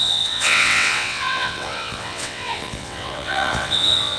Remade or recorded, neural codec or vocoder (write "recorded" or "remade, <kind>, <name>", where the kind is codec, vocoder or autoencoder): remade, vocoder, WaveNeXt